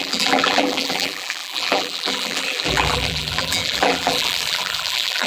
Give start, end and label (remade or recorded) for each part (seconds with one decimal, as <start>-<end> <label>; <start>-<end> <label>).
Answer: 0.0-5.3 remade